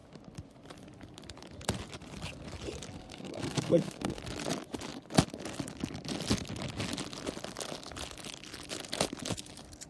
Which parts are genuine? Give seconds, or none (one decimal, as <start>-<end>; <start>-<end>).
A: 0.0-2.9; 4.2-9.9